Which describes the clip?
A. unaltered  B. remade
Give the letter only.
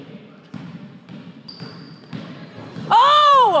B